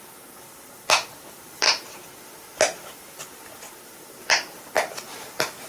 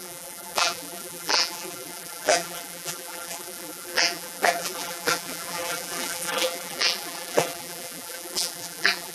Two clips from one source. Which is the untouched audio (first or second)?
first